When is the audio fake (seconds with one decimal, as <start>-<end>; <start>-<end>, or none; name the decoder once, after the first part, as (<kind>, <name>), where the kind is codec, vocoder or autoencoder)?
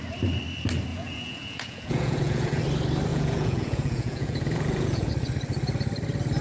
0.9-2.6 (vocoder, Vocos); 3.1-5.1